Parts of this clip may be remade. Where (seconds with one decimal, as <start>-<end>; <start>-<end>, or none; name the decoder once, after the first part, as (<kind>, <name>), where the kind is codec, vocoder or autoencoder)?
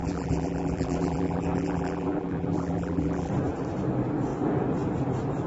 0.0-3.3 (vocoder, BigVGAN v2)